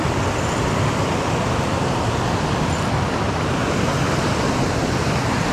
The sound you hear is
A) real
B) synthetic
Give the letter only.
A